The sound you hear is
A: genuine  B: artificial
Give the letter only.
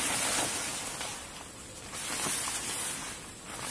A